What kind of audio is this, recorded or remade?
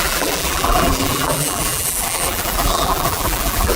remade